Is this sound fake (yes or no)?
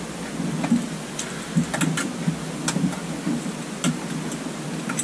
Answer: no